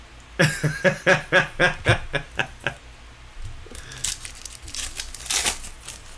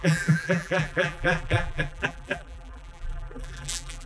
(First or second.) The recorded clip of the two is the first